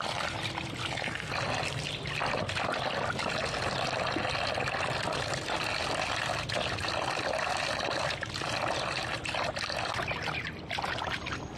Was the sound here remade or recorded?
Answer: recorded